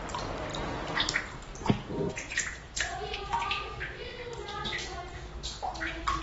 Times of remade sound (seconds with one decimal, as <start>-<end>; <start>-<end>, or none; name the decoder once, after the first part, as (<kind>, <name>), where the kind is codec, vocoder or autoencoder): 1.6-3.7 (vocoder, Vocos)